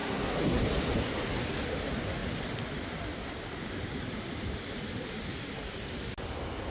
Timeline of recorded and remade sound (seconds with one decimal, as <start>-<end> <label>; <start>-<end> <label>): 0.0-0.6 remade; 0.6-6.7 recorded